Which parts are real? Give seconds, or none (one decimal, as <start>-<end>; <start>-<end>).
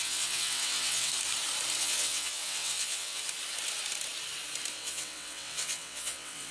1.1-1.8; 3.2-4.7